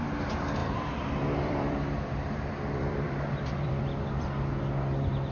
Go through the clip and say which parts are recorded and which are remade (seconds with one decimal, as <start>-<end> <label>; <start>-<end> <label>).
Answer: 0.0-0.6 recorded; 0.6-3.8 remade; 3.8-5.3 recorded